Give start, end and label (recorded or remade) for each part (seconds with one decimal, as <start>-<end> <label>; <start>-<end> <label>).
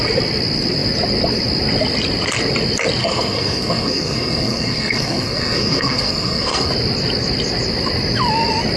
0.0-3.0 recorded; 3.0-6.7 remade; 6.7-8.8 recorded